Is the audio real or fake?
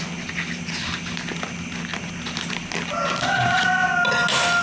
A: real